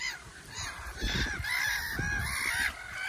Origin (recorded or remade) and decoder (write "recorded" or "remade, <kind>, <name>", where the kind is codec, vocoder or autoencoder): recorded